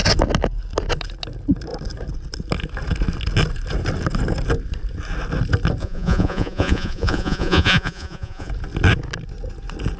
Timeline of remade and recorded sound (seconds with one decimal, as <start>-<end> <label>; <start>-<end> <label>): 0.0-5.8 recorded; 5.8-8.5 remade; 8.5-10.0 recorded